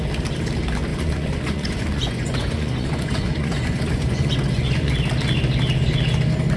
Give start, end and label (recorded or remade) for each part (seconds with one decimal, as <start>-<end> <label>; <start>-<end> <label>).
0.0-0.9 recorded; 0.9-4.9 remade; 4.9-6.6 recorded